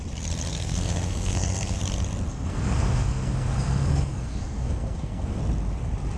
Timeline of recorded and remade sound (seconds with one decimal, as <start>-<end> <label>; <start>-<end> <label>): 0.0-0.5 recorded; 0.5-1.8 remade; 1.8-2.3 recorded; 2.3-5.4 remade; 5.4-6.2 recorded